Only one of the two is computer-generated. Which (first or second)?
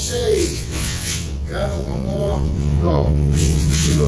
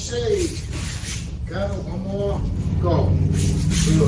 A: first